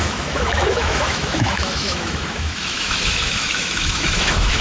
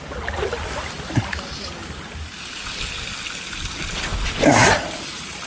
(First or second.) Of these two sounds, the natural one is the second